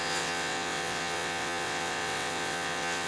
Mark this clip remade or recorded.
remade